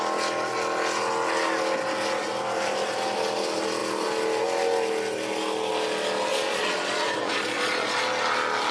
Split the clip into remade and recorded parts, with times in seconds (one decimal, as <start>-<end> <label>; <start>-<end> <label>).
0.0-6.3 recorded; 6.3-8.0 remade; 8.0-8.7 recorded